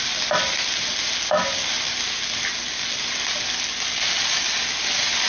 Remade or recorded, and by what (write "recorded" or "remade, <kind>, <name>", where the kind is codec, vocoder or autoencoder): recorded